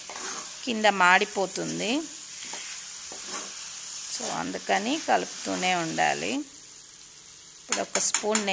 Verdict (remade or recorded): recorded